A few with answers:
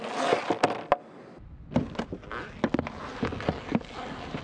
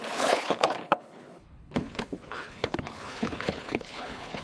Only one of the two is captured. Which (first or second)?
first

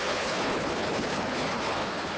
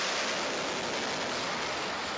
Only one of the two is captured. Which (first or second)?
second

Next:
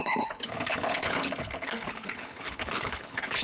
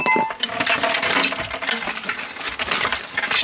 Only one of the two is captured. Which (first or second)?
second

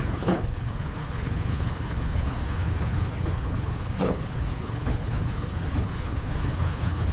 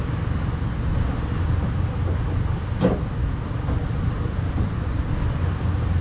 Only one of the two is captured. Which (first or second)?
second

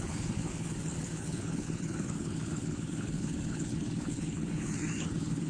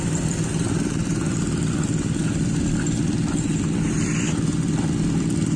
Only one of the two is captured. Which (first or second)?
second